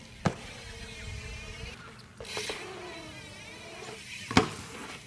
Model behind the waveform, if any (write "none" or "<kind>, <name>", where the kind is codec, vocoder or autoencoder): none